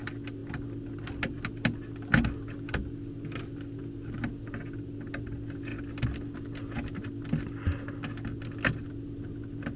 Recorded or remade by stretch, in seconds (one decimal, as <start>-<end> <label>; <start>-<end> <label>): 0.0-9.8 recorded